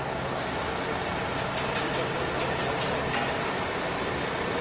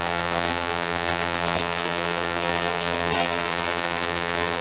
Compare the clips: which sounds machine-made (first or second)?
second